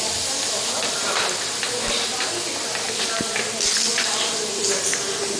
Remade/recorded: recorded